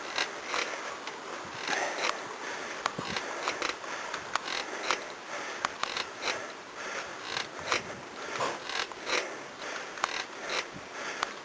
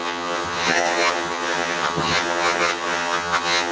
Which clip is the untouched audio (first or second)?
first